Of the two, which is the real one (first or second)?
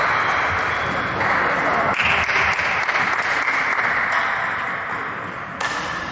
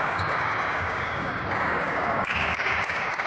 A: first